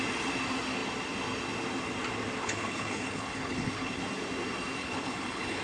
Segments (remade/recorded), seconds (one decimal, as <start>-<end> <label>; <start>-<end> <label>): 0.0-2.4 recorded; 2.4-4.0 remade; 4.0-4.8 recorded; 4.8-5.6 remade